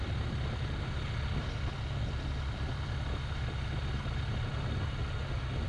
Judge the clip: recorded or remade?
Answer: recorded